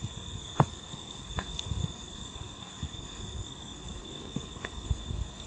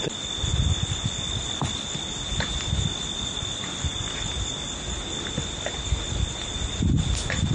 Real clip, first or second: second